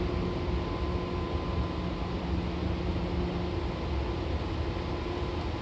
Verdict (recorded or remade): recorded